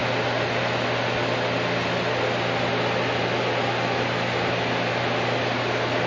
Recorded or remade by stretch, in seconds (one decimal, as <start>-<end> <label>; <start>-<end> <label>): 0.0-6.1 recorded